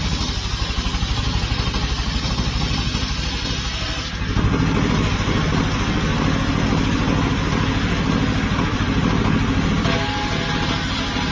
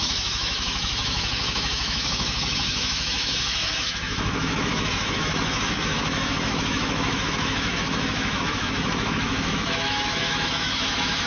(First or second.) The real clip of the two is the first